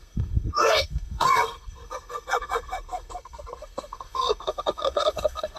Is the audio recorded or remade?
remade